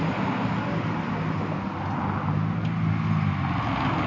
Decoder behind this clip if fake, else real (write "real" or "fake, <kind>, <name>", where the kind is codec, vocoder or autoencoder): real